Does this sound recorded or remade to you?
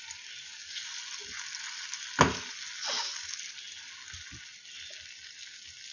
recorded